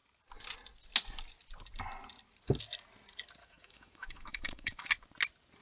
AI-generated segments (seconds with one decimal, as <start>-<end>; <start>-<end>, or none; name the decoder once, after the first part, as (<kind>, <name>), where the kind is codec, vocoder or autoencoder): 3.4-4.9 (autoencoder, DAC-VAE)